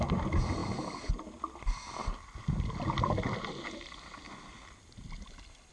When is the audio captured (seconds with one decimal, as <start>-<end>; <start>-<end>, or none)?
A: 0.0-5.7